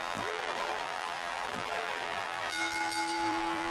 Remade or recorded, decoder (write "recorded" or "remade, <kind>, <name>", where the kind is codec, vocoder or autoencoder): remade, vocoder, BigVGAN v2